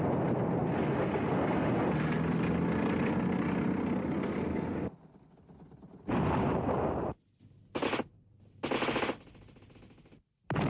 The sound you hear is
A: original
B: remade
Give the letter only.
A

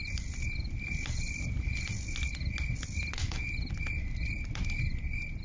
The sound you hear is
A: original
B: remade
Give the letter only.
A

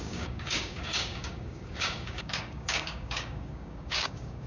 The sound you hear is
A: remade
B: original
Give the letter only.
A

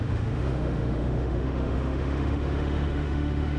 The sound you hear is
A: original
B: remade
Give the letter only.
B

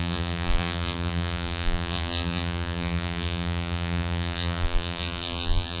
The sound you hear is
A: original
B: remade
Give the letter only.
B